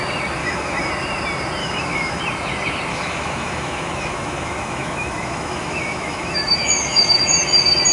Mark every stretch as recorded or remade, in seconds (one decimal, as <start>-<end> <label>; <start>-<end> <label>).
0.0-0.4 recorded; 0.4-0.9 remade; 0.9-1.6 recorded; 1.6-2.2 remade; 2.2-2.9 recorded; 2.9-7.4 remade; 7.4-7.9 recorded